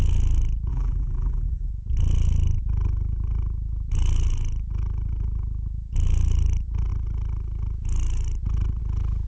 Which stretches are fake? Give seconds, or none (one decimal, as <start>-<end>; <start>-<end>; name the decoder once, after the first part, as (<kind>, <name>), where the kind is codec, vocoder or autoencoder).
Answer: 0.7-1.7 (vocoder, BigVGAN v2)